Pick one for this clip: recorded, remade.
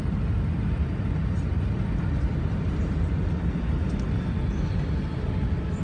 recorded